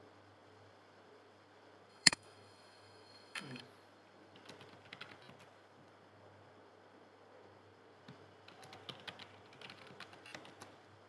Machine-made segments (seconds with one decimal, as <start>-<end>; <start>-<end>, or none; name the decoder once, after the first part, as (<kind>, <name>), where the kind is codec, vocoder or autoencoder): 1.9-3.6 (autoencoder, DAC-VAE)